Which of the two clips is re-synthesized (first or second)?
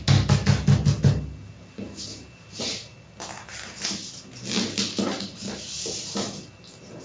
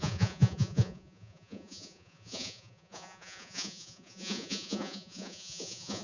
second